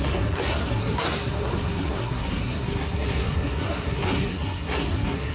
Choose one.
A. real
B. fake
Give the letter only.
B